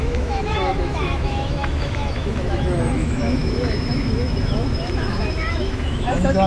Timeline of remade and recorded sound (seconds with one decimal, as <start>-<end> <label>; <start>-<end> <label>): 0.0-6.5 remade